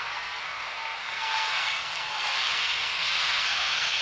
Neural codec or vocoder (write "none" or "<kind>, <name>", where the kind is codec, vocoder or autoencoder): codec, SNAC